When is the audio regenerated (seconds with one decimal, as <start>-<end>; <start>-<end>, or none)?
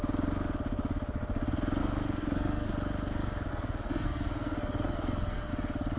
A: 1.8-2.7; 3.5-5.5